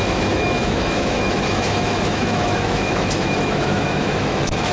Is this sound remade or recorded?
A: remade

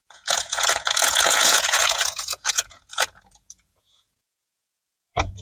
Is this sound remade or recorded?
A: remade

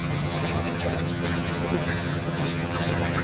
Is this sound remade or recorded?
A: remade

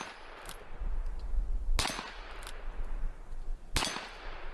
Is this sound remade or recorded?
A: recorded